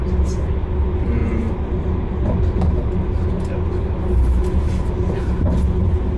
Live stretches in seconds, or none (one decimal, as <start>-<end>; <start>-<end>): 0.0-6.2